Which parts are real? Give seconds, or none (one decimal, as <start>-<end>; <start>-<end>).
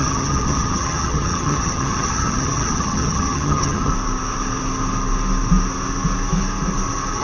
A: 3.9-7.2